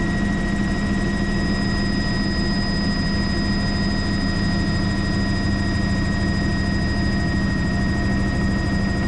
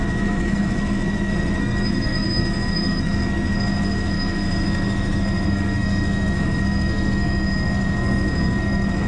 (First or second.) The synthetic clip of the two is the second